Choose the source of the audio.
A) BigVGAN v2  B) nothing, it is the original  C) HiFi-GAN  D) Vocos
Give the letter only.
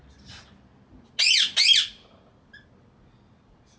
B